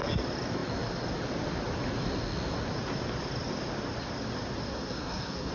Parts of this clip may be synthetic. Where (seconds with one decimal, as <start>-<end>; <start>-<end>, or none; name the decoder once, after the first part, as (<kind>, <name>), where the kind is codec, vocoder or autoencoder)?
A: 4.7-5.5 (codec, SNAC)